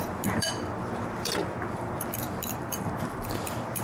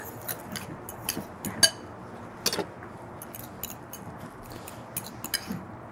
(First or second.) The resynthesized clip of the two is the first